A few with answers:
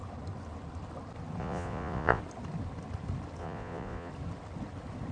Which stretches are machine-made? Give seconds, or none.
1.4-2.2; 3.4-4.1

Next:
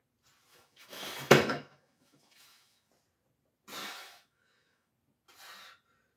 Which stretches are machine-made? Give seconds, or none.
0.5-2.9; 3.8-4.9